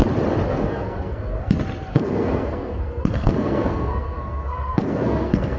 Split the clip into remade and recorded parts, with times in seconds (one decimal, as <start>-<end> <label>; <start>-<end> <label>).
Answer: 0.0-0.5 recorded; 0.5-1.5 remade; 1.5-1.9 recorded; 1.9-5.6 remade